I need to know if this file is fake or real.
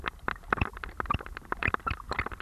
real